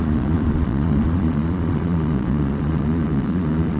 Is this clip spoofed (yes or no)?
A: yes